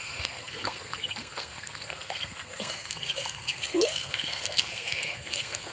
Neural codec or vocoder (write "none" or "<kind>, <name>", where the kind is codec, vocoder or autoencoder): codec, SNAC